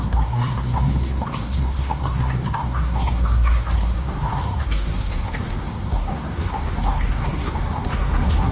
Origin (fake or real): fake